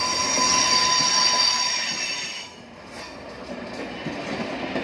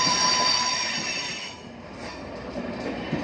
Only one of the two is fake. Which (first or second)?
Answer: second